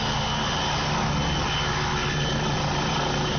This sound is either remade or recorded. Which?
recorded